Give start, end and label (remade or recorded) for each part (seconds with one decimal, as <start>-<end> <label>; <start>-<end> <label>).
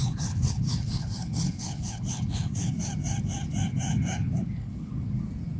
0.0-2.7 remade; 2.7-3.9 recorded; 3.9-4.9 remade; 4.9-5.6 recorded